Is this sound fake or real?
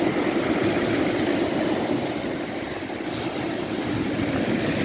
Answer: real